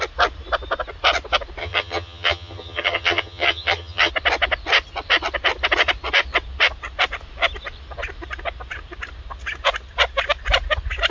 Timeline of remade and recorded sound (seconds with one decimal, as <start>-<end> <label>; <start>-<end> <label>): 0.0-1.6 recorded; 1.6-4.1 remade; 4.1-11.1 recorded